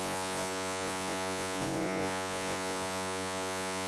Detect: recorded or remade remade